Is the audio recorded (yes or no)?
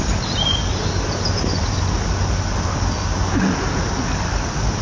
yes